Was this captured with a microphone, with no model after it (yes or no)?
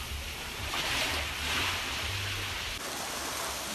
yes